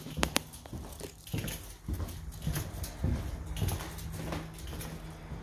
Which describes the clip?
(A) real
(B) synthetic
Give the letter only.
A